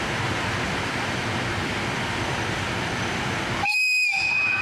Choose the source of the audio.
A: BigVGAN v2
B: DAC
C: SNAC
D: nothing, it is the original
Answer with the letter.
A